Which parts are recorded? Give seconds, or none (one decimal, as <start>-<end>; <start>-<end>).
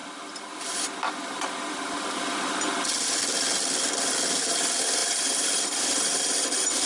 0.0-6.9